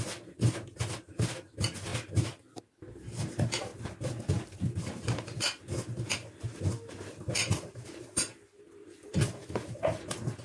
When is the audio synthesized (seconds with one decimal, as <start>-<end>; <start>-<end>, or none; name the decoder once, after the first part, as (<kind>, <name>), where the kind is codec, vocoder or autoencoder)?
7.4-10.0 (vocoder, BigVGAN v2)